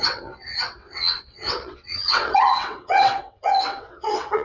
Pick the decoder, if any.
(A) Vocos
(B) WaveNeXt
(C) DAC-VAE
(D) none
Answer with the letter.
B